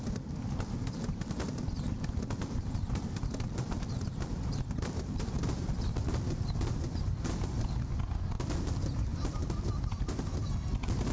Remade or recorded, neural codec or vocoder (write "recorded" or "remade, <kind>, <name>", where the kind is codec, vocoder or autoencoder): recorded